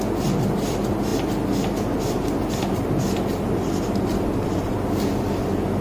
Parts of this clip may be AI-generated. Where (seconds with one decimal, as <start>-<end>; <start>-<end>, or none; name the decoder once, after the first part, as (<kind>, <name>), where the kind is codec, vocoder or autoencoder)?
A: none